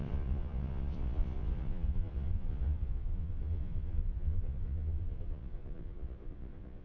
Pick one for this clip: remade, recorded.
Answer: remade